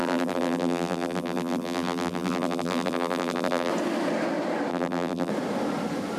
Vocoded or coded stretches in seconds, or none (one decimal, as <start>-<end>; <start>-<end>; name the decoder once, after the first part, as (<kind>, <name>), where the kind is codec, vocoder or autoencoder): 0.0-3.7 (vocoder, BigVGAN v2); 4.7-5.3